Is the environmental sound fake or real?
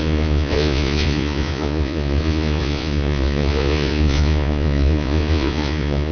fake